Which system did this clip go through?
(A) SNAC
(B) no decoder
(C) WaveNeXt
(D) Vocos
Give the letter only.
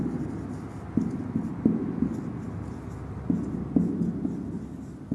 B